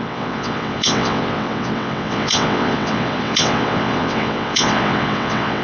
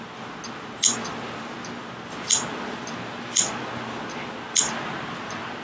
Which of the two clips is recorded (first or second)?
second